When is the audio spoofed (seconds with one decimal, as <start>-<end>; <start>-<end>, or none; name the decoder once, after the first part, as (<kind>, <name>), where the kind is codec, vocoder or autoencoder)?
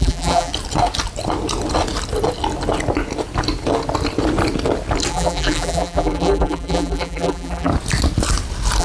0.0-0.5 (vocoder, BigVGAN v2); 5.1-7.7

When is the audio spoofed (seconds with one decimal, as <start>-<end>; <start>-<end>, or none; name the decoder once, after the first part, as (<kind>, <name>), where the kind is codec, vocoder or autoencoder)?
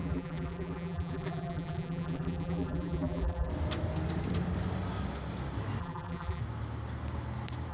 0.0-3.5 (vocoder, BigVGAN v2); 5.8-6.4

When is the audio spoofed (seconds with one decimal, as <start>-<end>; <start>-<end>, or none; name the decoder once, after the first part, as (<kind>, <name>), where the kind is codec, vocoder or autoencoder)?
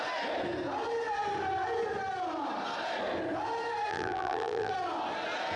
3.9-4.7 (vocoder, BigVGAN v2)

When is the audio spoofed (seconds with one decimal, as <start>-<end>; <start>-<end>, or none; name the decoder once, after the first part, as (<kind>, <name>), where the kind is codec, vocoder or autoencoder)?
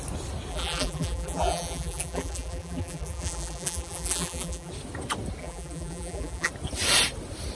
0.5-4.7 (vocoder, BigVGAN v2); 5.4-6.5